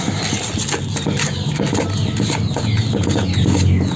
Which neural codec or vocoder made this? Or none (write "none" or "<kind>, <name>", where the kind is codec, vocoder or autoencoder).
none